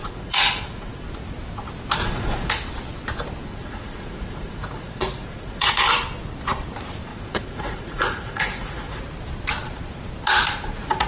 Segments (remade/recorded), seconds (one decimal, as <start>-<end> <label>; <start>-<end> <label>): 0.0-1.1 remade; 1.1-2.0 recorded; 2.0-2.5 remade; 2.5-3.5 recorded; 3.5-5.9 remade; 5.9-7.1 recorded; 7.1-9.0 remade; 9.0-11.1 recorded